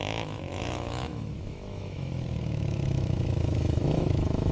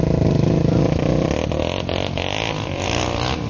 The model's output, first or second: first